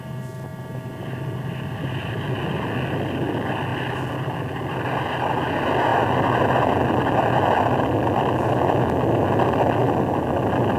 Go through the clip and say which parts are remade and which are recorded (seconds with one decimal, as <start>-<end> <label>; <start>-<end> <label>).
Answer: 0.0-10.8 recorded